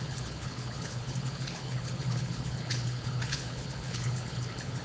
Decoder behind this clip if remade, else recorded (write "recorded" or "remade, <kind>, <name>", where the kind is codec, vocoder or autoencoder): remade, codec, HILCodec